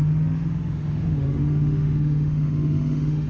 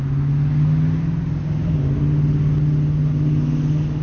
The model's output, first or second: first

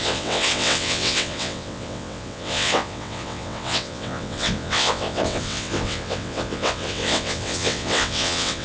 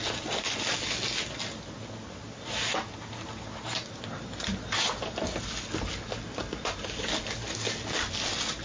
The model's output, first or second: first